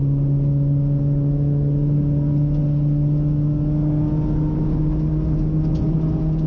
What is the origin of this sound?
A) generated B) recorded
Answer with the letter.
B